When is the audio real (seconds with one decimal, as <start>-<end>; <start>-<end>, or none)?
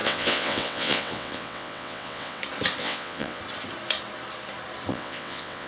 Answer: 2.4-2.8; 3.4-4.9